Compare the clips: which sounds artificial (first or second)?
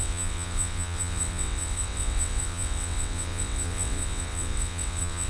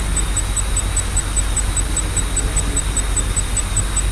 first